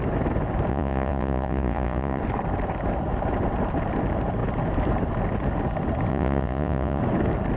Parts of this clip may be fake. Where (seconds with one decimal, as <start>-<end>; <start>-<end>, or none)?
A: 0.7-2.2; 6.1-7.0